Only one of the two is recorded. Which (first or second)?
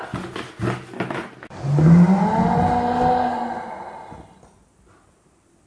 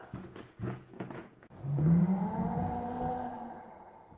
first